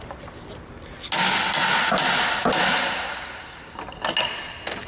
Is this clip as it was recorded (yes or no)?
yes